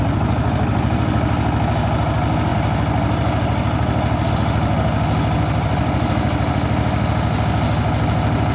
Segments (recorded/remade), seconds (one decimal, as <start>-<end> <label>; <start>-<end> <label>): 0.0-8.5 recorded